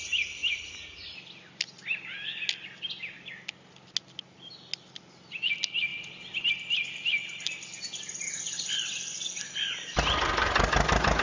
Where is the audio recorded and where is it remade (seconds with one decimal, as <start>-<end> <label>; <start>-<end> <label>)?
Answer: 0.0-11.2 recorded